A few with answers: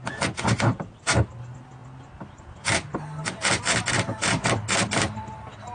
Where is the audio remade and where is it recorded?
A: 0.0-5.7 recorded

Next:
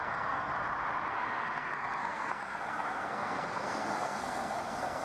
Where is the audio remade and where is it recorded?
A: 0.0-0.5 remade; 0.5-1.1 recorded; 1.1-5.0 remade

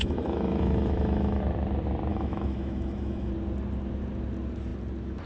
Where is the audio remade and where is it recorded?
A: 0.0-1.4 remade; 1.4-2.1 recorded; 2.1-3.3 remade; 3.3-5.3 recorded

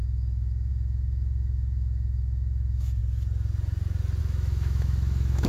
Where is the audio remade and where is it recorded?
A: 0.0-3.0 remade; 3.0-4.2 recorded; 4.2-5.5 remade

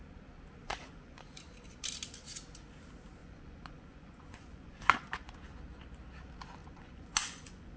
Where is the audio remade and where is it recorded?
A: 0.0-0.6 recorded; 0.6-1.4 remade; 1.4-3.2 recorded; 3.2-5.6 remade; 5.6-6.6 recorded; 6.6-7.8 remade

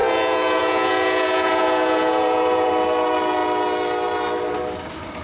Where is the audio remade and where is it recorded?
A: 0.0-2.7 remade; 2.7-5.2 recorded